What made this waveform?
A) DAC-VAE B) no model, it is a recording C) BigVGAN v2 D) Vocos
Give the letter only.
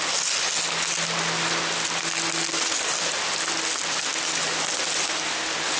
B